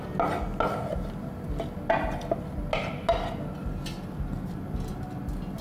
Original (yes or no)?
yes